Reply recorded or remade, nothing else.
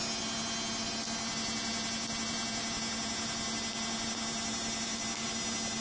recorded